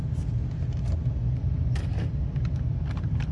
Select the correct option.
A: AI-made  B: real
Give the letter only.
B